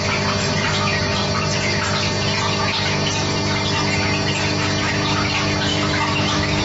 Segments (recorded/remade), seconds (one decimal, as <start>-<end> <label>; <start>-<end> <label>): 0.0-5.7 recorded; 5.7-6.6 remade